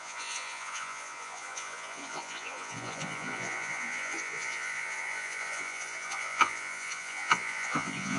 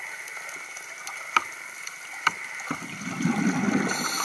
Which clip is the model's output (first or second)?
first